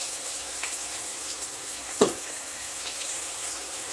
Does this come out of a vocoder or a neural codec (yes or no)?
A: yes